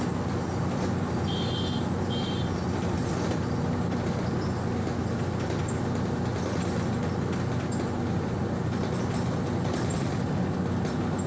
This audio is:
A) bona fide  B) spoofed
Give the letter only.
A